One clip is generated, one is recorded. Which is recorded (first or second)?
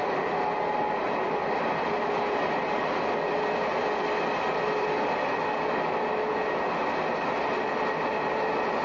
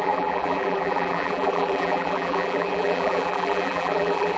first